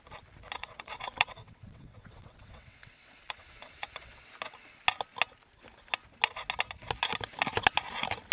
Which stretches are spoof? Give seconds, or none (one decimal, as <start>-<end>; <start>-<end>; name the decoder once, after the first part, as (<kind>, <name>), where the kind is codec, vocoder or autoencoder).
0.6-4.3 (vocoder, WaveNeXt)